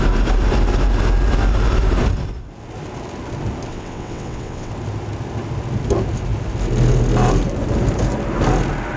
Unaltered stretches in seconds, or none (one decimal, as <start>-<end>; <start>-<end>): 0.0-3.7; 4.7-9.0